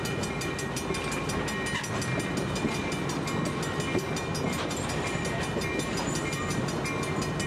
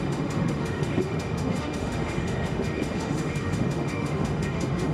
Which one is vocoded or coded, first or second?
second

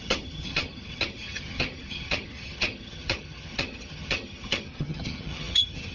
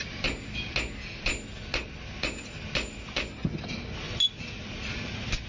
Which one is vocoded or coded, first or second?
first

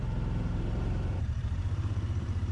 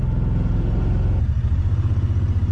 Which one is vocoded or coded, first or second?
first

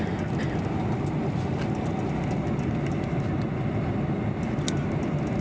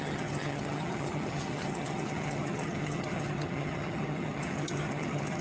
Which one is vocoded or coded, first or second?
second